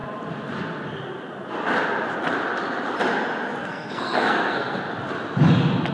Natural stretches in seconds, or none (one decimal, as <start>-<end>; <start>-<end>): 0.0-3.6; 4.8-5.9